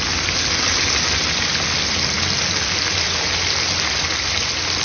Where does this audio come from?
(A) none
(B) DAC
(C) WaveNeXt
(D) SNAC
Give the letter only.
A